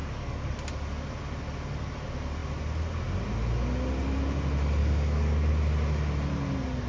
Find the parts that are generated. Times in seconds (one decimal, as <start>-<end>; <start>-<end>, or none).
0.0-0.5; 4.8-5.5

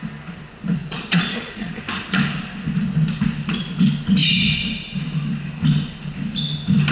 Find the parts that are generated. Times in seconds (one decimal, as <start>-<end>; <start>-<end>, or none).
0.8-1.8

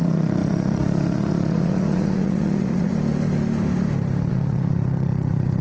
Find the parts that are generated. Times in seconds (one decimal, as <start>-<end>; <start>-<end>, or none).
0.0-2.9; 4.3-5.6

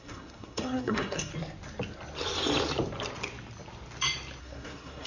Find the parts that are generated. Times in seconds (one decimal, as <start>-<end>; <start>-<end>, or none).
0.0-1.3; 4.4-5.1